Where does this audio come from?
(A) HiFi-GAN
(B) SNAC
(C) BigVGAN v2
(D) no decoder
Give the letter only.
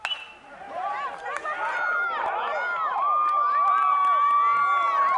D